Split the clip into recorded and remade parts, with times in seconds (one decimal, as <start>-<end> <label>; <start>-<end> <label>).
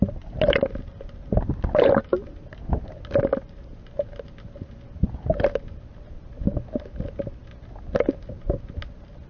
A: 0.0-9.3 recorded